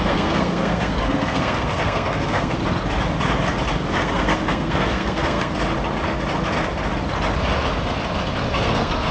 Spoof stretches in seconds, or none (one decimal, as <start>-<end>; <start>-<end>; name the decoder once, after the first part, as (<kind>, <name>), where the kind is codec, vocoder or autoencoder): 0.0-2.6 (codec, SNAC); 3.9-5.5; 8.5-9.1